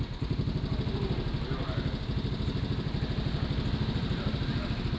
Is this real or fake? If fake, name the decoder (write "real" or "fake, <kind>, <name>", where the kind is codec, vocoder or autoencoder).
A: real